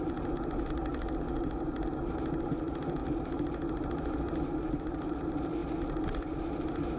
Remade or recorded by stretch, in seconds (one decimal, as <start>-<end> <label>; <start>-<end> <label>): 0.0-7.0 recorded